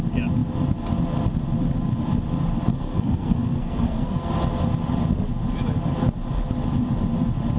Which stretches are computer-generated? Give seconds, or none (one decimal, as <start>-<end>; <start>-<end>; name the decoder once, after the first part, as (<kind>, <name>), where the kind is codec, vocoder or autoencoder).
2.7-4.3 (codec, SNAC)